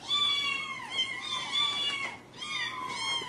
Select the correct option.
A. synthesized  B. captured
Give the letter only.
B